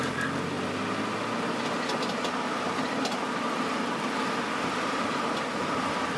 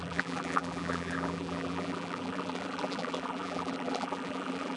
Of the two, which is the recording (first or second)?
first